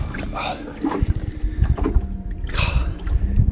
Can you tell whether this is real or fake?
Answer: real